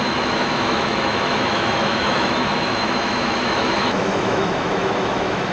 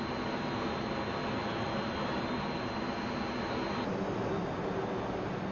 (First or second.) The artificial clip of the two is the first